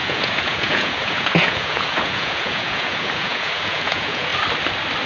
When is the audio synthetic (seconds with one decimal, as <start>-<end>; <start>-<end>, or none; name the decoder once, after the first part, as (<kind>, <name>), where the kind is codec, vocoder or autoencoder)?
0.0-4.3 (vocoder, Vocos)